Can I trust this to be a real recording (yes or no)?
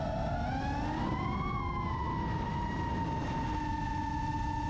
yes